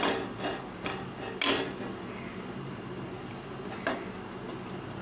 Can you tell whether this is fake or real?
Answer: real